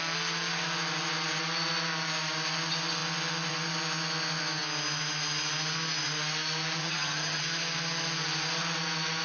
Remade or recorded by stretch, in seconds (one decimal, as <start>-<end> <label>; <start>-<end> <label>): 0.0-6.8 recorded; 6.8-7.4 remade; 7.4-9.2 recorded